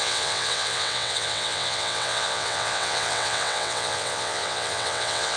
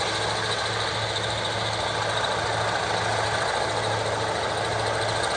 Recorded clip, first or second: second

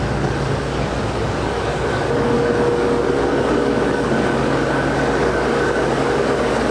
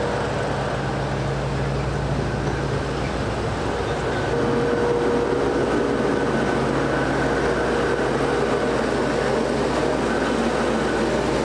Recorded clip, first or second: second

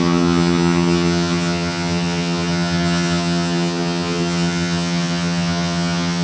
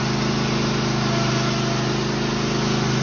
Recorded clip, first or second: second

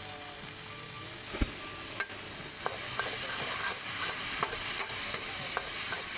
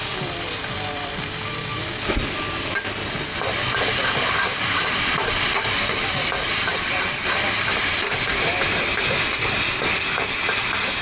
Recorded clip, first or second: first